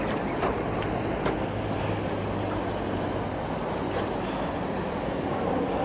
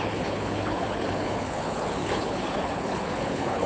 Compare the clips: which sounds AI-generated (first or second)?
second